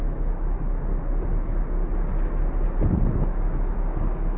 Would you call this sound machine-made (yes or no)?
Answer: no